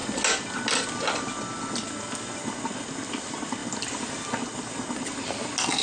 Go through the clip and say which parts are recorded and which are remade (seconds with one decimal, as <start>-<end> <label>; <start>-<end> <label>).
0.0-5.8 recorded